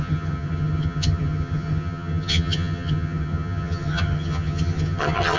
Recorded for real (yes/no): no